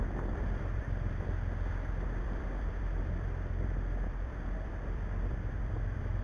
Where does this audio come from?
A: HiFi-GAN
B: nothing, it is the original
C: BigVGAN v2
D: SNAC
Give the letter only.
C